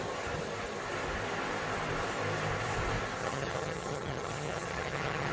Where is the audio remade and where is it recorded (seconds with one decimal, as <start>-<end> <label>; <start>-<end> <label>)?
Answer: 0.0-3.2 recorded; 3.2-5.3 remade

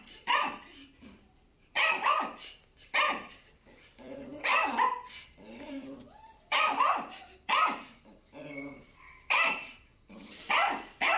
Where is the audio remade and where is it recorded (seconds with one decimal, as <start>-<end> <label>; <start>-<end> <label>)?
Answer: 0.0-7.2 remade; 7.2-8.3 recorded; 8.3-11.2 remade

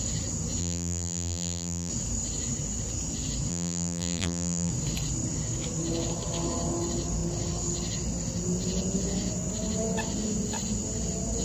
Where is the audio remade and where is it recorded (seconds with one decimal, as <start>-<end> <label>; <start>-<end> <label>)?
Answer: 0.0-0.6 recorded; 0.6-1.9 remade; 1.9-3.5 recorded; 3.5-4.7 remade; 4.7-11.4 recorded

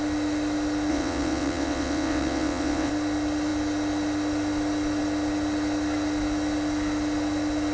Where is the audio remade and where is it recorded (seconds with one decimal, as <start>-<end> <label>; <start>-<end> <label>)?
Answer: 0.0-0.9 recorded; 0.9-2.9 remade; 2.9-7.7 recorded

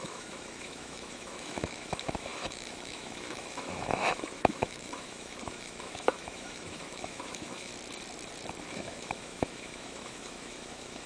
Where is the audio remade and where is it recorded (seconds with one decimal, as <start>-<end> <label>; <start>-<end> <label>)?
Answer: 0.0-7.7 remade; 7.7-8.7 recorded; 8.7-11.1 remade

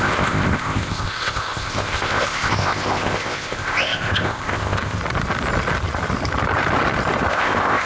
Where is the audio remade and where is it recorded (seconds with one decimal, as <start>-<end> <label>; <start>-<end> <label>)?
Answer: 0.0-5.0 remade; 5.0-7.3 recorded; 7.3-7.9 remade

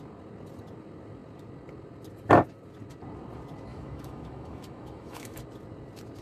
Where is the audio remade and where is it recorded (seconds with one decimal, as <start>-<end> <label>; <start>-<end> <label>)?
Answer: 0.0-3.7 recorded; 3.7-5.4 remade; 5.4-6.2 recorded

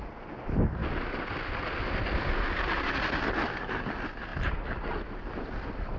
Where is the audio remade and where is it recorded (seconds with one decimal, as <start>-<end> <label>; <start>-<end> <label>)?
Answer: 0.0-6.0 recorded